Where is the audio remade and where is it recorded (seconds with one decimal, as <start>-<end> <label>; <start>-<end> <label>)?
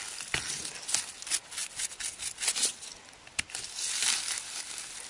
0.0-5.1 recorded